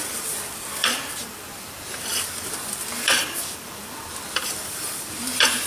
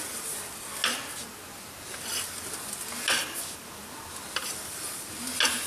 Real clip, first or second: second